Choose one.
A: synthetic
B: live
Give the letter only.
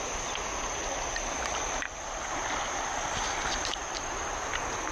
B